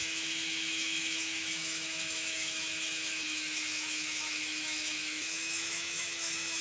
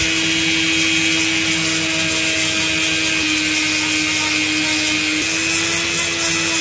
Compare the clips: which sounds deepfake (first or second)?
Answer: first